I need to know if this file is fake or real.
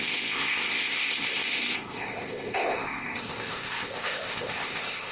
fake